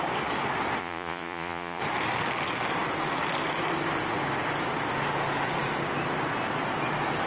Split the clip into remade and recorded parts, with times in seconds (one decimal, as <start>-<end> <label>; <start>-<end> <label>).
0.0-0.8 recorded; 0.8-1.8 remade; 1.8-7.3 recorded